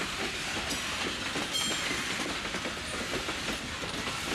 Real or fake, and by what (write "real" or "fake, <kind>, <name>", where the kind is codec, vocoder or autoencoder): real